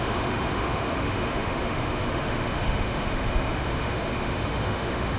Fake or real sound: fake